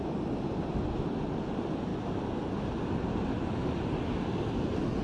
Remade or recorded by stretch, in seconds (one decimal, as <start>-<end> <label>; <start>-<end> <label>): 0.0-5.0 recorded